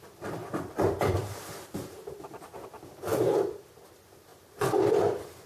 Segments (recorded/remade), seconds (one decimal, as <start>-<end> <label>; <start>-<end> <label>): 0.0-0.4 recorded; 0.4-2.2 remade; 2.2-3.1 recorded; 3.1-3.6 remade; 3.6-5.5 recorded